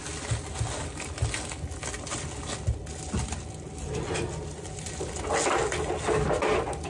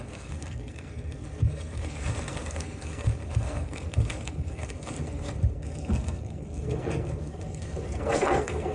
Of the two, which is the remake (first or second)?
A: second